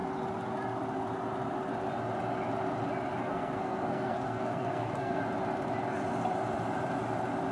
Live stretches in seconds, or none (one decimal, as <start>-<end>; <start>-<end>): 0.0-3.2; 5.2-7.5

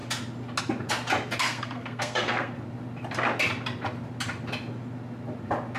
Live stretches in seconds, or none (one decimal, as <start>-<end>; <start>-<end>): 0.0-1.4; 2.5-5.8